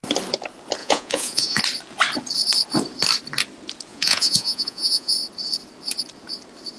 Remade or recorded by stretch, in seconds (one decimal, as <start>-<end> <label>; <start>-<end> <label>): 0.0-0.8 recorded; 0.8-1.6 remade; 1.6-3.9 recorded; 3.9-5.1 remade; 5.1-6.8 recorded